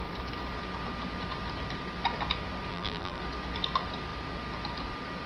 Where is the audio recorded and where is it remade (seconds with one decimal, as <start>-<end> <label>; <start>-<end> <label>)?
0.0-2.7 recorded; 2.7-3.2 remade; 3.2-5.3 recorded